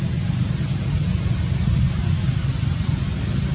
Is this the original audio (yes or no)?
yes